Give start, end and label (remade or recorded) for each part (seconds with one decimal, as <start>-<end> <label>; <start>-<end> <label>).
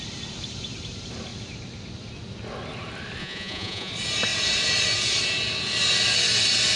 0.0-3.2 recorded; 3.2-3.9 remade; 3.9-6.8 recorded